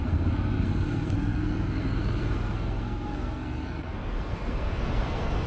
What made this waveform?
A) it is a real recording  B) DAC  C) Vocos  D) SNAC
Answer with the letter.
D